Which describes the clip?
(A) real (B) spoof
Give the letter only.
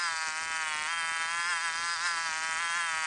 A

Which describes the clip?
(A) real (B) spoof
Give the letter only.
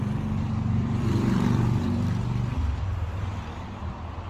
B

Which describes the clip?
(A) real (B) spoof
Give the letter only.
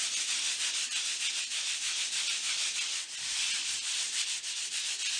B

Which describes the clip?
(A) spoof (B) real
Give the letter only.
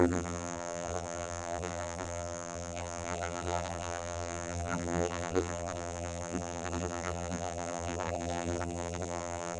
A